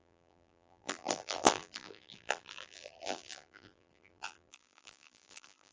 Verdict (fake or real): fake